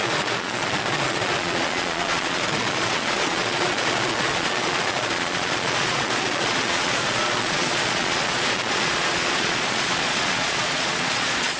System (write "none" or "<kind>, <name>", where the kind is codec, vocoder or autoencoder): vocoder, Vocos